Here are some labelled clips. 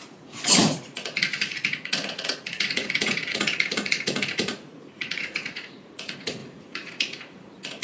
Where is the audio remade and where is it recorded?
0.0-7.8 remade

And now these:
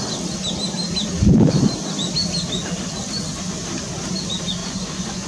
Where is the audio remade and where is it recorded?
0.0-4.6 recorded; 4.6-5.3 remade

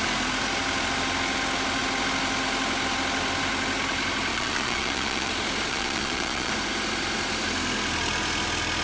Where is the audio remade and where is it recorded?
0.0-4.3 recorded; 4.3-5.3 remade; 5.3-5.7 recorded; 5.7-6.5 remade; 6.5-8.8 recorded

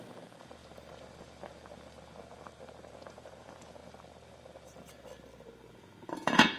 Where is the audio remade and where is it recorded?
0.0-0.6 remade; 0.6-2.9 recorded; 2.9-3.8 remade; 3.8-5.7 recorded; 5.7-6.6 remade

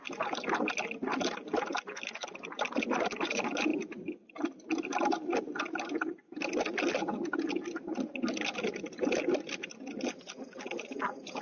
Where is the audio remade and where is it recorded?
0.0-11.4 recorded

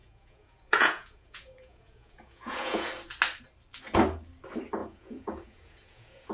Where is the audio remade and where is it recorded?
0.0-2.9 remade; 2.9-4.8 recorded; 4.8-6.3 remade

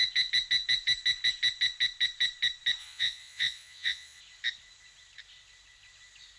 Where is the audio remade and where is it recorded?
0.0-2.8 recorded; 2.8-4.2 remade; 4.2-6.4 recorded